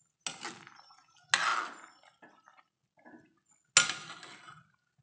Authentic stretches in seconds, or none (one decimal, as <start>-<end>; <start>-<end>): 0.0-5.0